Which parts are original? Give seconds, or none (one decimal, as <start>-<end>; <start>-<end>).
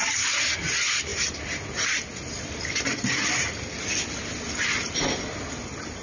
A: 0.0-6.0